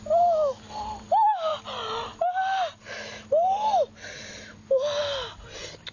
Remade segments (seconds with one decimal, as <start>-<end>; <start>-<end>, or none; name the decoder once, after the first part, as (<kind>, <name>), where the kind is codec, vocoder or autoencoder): none